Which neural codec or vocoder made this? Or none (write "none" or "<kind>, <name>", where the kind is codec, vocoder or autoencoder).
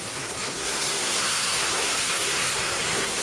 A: codec, SNAC